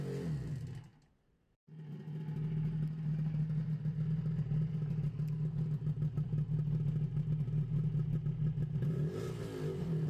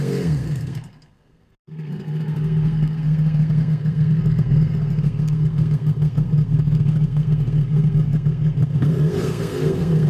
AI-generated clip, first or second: second